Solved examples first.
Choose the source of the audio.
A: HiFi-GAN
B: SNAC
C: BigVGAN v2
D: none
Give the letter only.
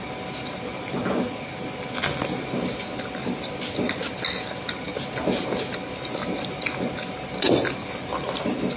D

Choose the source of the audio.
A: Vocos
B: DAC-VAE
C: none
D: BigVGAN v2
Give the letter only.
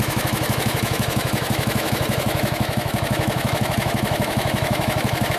B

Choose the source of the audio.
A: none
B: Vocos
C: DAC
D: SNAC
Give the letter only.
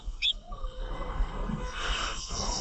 D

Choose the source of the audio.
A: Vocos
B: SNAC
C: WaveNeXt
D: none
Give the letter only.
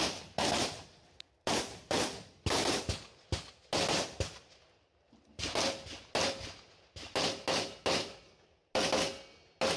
D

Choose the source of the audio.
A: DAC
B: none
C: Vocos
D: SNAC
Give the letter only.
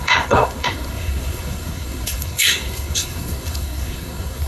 D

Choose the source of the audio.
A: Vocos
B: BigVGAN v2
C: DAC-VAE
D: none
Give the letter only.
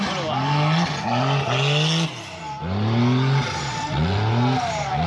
D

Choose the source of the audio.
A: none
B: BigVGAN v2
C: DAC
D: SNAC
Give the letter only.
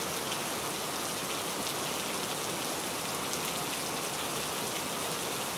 A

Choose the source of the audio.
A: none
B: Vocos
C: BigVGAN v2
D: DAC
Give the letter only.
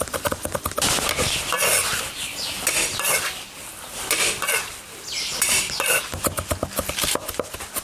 A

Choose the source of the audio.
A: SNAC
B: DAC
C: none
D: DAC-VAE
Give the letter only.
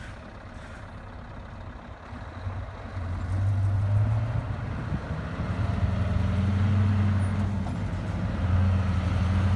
C